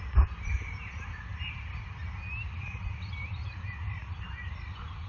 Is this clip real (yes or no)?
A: yes